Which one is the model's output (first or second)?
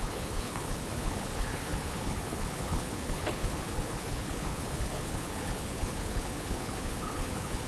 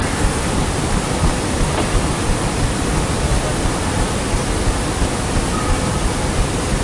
first